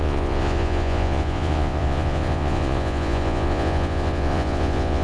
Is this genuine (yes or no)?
no